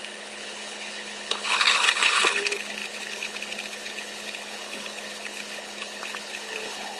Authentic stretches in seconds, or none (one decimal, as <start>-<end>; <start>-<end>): none

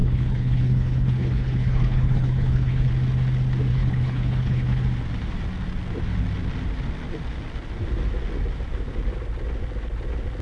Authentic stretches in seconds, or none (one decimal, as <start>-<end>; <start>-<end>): 2.9-3.7; 4.8-10.4

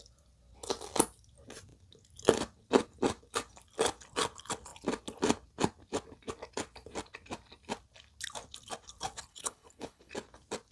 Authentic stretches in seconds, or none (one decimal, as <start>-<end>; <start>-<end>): 0.0-9.3; 10.1-10.7

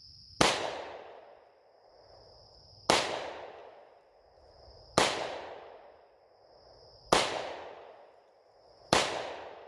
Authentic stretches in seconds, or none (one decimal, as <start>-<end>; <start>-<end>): 0.0-9.7

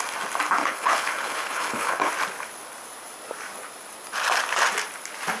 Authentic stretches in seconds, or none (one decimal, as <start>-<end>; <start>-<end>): 0.0-0.6; 2.1-5.4

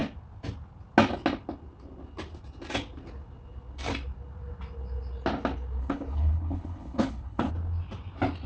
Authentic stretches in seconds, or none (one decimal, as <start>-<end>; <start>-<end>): 0.0-5.8; 7.5-8.5

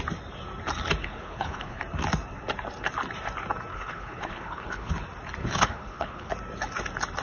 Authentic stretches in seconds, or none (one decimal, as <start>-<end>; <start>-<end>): 0.0-1.0; 1.8-3.7; 4.9-5.4; 6.3-7.2

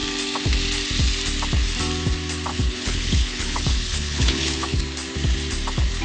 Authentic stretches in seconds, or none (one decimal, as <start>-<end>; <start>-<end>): 0.0-2.5; 4.8-6.0